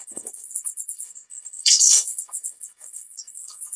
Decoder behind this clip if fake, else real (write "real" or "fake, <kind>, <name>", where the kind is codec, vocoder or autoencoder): fake, codec, SNAC